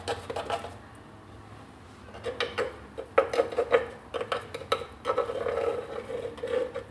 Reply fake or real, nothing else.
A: real